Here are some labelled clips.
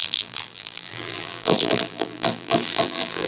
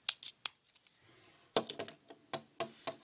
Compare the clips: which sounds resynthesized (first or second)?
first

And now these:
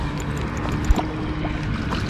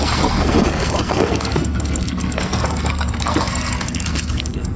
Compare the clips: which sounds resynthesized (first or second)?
second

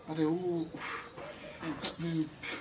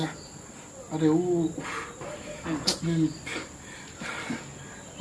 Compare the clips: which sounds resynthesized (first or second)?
first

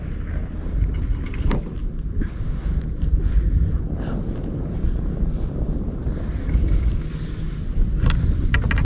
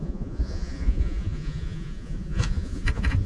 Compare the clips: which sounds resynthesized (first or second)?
second